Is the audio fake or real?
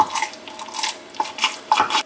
real